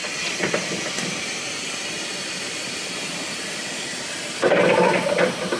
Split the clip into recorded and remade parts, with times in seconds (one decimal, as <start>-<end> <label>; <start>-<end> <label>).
0.0-5.6 recorded